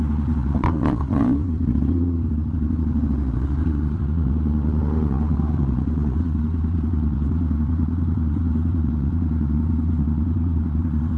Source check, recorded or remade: remade